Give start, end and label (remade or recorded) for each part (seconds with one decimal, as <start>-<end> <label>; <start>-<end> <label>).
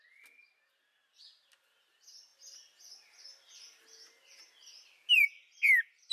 0.0-6.1 recorded